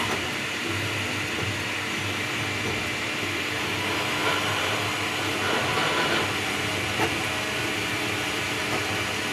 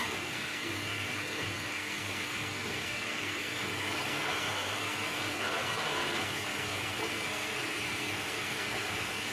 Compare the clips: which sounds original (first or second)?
first